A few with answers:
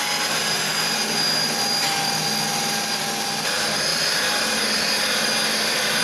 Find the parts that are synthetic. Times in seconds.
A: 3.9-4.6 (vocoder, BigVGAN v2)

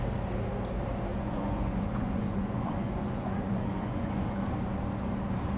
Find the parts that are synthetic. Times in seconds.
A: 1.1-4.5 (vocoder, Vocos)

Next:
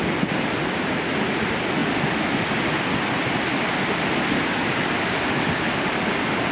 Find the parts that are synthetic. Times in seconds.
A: none

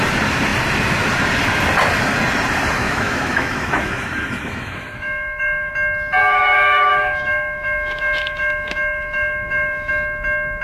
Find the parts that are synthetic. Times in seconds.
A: 2.8-5.7 (autoencoder, DAC-VAE); 6.2-9.9